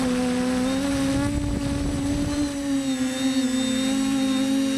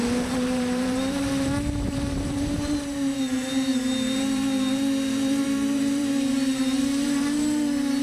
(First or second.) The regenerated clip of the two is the second